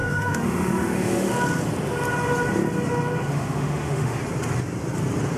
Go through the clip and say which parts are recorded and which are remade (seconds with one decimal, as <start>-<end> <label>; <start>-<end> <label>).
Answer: 0.0-1.3 remade; 1.3-3.3 recorded; 3.3-4.2 remade; 4.2-5.4 recorded